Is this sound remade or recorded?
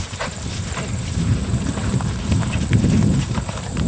remade